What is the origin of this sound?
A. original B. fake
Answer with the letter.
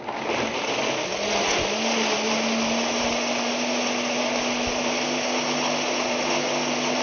A